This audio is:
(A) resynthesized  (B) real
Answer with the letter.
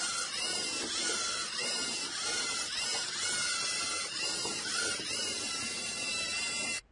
A